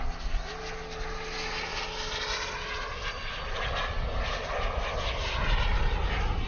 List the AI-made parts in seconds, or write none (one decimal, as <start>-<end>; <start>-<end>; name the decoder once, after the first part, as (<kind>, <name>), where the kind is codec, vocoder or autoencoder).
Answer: none